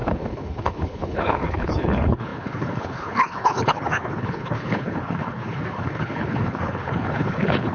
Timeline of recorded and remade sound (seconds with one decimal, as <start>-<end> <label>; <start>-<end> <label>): 0.0-7.7 remade

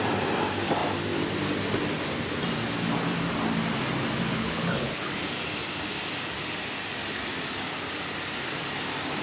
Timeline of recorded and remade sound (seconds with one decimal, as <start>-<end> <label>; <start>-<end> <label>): 0.0-4.3 recorded; 4.3-5.2 remade; 5.2-9.2 recorded

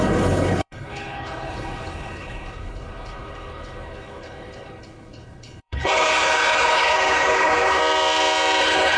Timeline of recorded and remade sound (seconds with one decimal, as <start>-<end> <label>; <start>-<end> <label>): 0.0-7.8 remade; 7.8-8.6 recorded; 8.6-9.0 remade

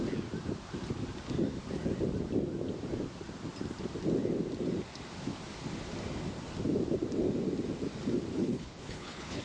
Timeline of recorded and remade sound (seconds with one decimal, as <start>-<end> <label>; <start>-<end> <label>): 0.0-8.3 recorded; 8.3-9.4 remade

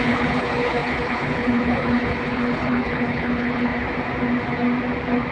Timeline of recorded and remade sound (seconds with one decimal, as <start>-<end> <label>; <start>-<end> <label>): 0.0-3.7 remade; 3.7-5.3 recorded